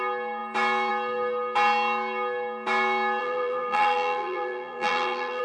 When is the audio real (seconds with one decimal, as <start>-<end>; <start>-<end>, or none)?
0.0-3.2